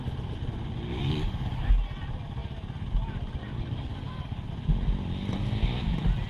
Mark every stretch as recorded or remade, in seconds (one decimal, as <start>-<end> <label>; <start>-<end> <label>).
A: 0.0-0.9 recorded; 0.9-1.7 remade; 1.7-3.4 recorded; 3.4-4.5 remade; 4.5-6.3 recorded